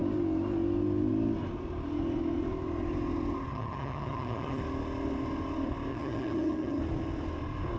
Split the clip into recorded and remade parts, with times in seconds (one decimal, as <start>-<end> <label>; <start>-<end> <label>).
0.0-3.5 recorded; 3.5-4.6 remade; 4.6-5.9 recorded; 5.9-6.8 remade; 6.8-7.8 recorded